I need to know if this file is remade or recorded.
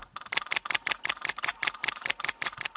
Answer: recorded